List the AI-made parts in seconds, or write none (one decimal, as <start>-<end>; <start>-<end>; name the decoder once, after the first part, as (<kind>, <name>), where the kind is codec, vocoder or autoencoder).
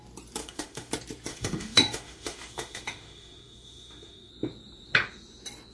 0.4-0.9 (autoencoder, DAC-VAE); 1.3-4.3